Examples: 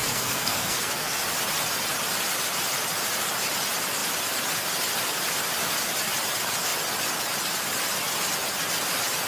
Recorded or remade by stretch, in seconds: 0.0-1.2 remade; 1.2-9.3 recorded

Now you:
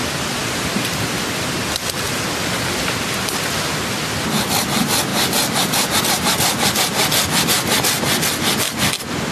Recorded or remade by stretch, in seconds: 0.0-9.3 recorded